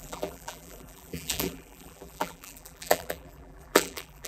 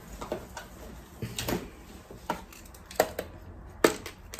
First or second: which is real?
second